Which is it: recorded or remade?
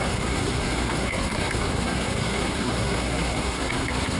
remade